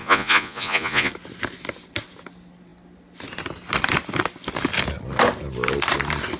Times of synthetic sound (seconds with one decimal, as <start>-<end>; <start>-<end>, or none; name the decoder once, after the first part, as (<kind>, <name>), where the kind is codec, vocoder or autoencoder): 0.0-1.1 (vocoder, Vocos)